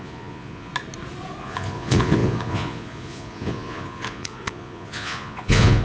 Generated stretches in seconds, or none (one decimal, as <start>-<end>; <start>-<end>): 0.0-0.7; 1.4-5.8